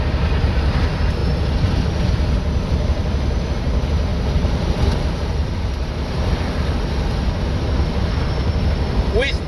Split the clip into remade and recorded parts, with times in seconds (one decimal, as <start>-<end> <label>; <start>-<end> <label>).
0.0-1.2 remade; 1.2-1.8 recorded; 1.8-9.5 remade